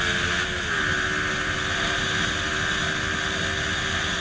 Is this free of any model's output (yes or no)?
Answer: yes